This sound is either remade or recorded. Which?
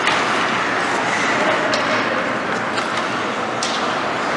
recorded